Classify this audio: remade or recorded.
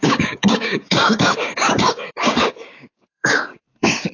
remade